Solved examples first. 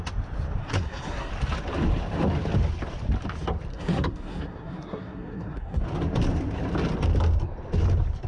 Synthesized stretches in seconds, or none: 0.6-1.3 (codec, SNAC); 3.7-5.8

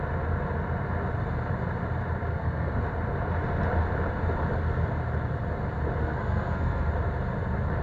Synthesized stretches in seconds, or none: 2.3-2.8 (codec, SNAC); 6.0-6.9